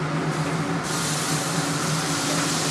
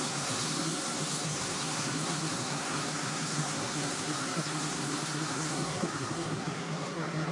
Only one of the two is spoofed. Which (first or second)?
second